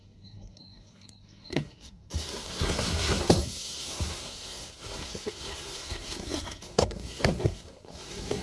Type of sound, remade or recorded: remade